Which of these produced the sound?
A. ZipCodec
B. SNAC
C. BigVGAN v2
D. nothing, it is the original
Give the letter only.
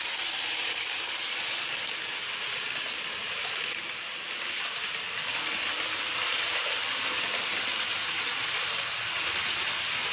D